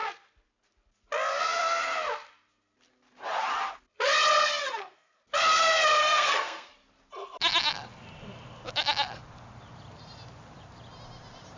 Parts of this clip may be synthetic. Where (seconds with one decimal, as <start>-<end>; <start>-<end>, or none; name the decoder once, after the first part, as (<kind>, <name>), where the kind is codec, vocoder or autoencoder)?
4.6-5.2 (codec, SNAC); 6.0-6.7